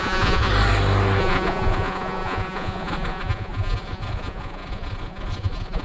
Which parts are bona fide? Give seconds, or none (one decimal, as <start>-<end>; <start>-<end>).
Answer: 0.5-1.2